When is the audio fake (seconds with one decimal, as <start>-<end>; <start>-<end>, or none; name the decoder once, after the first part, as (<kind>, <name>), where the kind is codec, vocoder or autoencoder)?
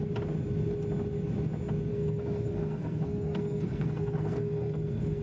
1.9-5.2 (codec, SNAC)